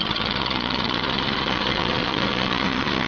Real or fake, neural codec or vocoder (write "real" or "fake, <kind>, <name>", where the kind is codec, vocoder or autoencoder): fake, vocoder, Vocos